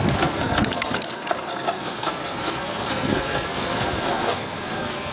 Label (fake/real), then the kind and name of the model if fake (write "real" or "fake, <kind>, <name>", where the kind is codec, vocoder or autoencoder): fake, codec, SNAC